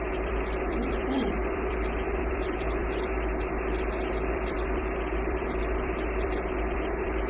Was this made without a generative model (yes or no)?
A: no